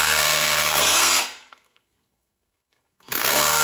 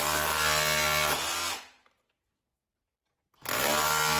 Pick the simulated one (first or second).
first